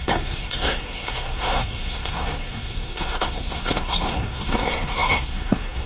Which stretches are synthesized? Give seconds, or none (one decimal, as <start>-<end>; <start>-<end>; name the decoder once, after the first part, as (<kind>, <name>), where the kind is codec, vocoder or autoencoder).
0.0-5.9 (codec, SNAC)